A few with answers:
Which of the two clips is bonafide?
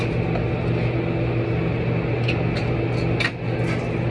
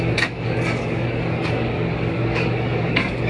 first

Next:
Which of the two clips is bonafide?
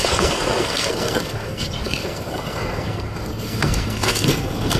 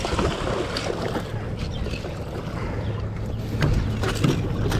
second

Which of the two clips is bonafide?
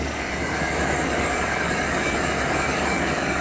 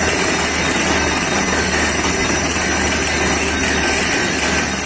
second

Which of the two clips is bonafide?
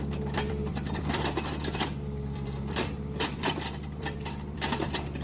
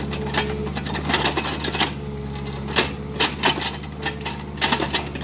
second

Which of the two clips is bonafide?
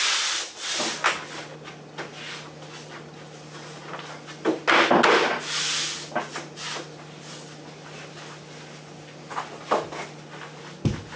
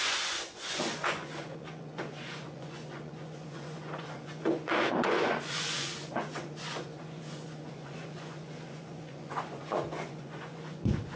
first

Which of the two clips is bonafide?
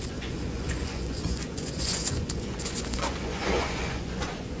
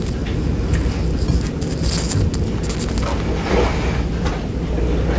second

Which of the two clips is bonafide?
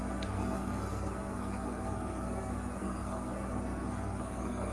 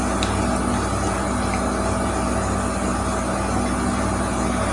second